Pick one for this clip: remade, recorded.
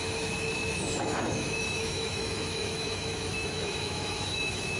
remade